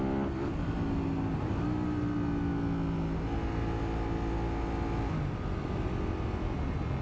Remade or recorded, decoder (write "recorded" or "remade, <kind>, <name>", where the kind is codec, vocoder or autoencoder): recorded